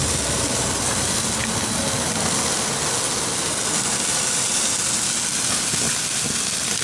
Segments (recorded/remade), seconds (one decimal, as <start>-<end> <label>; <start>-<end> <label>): 0.0-6.8 recorded